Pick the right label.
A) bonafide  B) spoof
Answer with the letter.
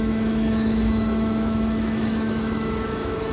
B